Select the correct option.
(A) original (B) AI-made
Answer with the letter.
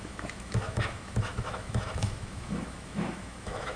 B